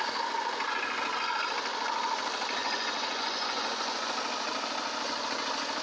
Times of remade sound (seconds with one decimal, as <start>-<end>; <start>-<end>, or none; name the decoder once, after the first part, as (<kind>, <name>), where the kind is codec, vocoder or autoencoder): 2.6-4.1 (vocoder, Vocos)